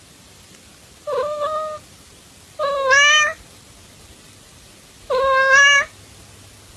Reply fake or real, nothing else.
real